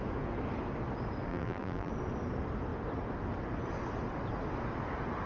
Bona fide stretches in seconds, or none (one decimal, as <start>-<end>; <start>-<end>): 0.0-1.3; 1.9-5.3